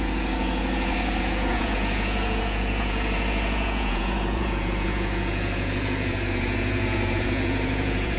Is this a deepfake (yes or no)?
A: yes